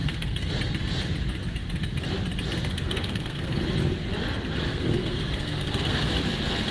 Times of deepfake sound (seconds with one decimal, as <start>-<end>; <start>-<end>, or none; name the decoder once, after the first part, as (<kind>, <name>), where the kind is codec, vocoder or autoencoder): 0.0-0.5 (codec, SNAC); 2.7-3.6; 4.7-6.1